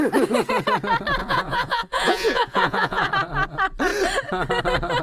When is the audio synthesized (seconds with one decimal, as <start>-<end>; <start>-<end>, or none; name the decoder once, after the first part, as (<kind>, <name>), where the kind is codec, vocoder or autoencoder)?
1.2-3.1 (vocoder, Vocos)